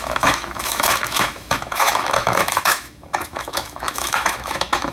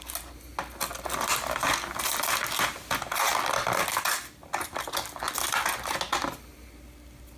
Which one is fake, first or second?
first